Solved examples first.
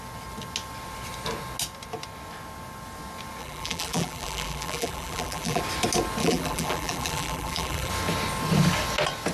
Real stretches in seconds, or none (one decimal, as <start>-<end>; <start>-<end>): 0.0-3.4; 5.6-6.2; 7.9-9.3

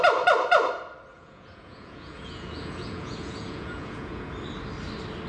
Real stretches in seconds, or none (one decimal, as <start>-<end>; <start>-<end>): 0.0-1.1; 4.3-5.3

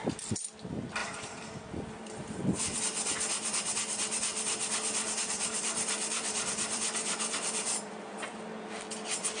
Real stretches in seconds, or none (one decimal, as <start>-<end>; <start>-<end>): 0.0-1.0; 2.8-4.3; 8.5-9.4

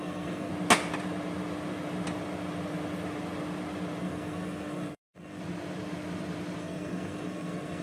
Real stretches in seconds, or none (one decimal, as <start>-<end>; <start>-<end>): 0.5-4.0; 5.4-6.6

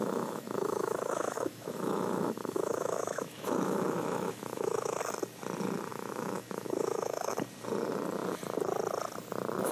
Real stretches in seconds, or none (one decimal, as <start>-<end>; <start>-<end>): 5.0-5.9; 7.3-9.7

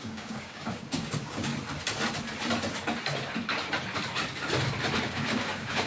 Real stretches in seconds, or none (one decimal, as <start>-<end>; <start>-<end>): 1.5-5.0

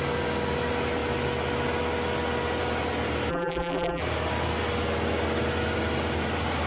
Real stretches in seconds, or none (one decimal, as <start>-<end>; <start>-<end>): 0.0-3.3; 4.0-6.7

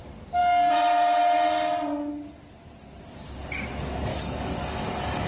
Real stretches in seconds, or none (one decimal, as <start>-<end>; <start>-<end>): 0.0-4.1